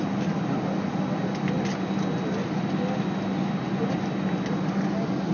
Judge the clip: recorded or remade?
recorded